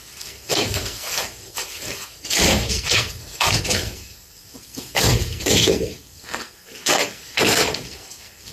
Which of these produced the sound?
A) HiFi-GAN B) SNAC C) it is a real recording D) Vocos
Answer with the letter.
B